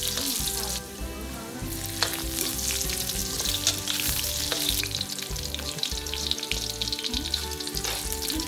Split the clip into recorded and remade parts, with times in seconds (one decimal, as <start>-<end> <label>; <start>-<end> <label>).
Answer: 0.0-3.2 recorded; 3.2-6.5 remade; 6.5-8.5 recorded